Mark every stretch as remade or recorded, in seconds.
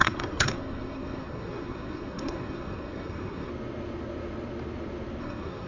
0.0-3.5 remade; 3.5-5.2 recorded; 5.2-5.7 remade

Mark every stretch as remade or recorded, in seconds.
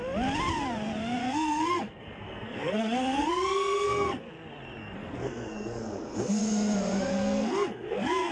0.0-1.2 recorded; 1.2-4.2 remade; 4.2-4.8 recorded; 4.8-6.4 remade; 6.4-7.1 recorded; 7.1-8.3 remade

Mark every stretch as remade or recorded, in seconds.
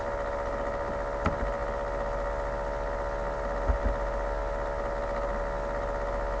0.0-6.4 recorded